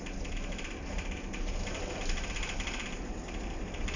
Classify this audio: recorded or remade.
recorded